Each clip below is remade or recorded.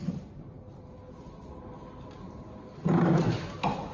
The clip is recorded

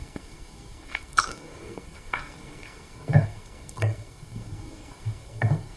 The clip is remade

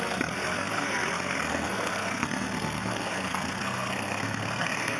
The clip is remade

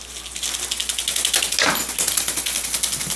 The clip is recorded